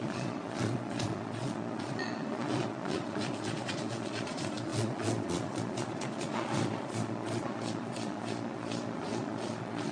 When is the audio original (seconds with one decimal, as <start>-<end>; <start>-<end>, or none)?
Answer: none